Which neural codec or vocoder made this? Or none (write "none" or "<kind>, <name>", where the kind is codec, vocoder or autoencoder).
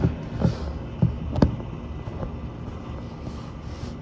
none